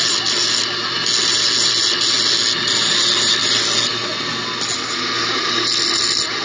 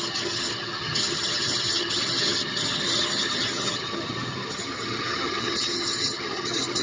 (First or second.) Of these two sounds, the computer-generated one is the second